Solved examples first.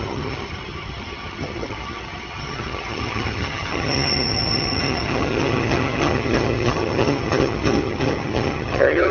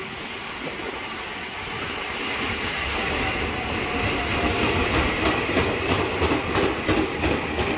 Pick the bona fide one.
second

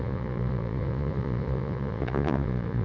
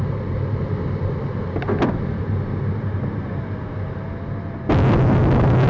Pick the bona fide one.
second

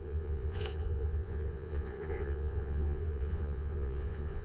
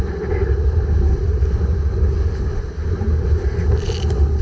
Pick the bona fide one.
second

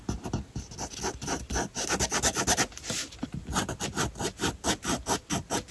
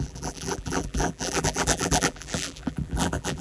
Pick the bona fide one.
first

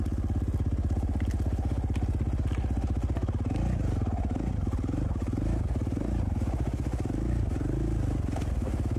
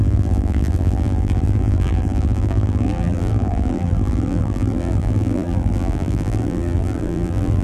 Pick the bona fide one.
first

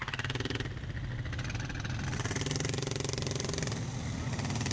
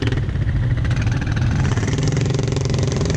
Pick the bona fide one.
first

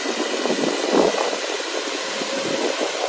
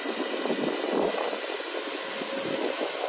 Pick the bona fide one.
second